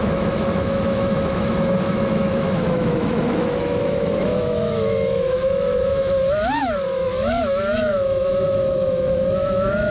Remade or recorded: remade